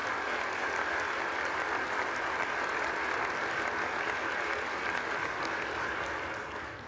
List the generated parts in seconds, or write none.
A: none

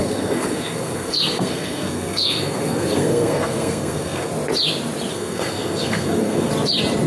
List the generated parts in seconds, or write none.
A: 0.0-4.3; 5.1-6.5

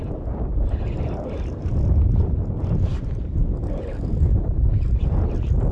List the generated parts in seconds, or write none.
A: none